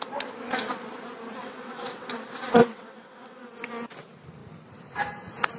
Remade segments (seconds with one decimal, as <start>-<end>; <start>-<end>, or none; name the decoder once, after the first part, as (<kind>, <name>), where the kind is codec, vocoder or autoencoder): 1.4-2.1 (vocoder, WaveNeXt); 2.6-3.7